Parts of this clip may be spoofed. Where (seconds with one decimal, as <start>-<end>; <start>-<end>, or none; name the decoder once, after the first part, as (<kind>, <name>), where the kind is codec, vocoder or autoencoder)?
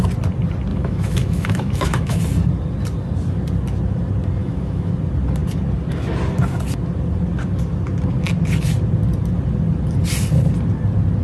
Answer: 0.7-2.2 (autoencoder, DAC-VAE); 4.4-4.9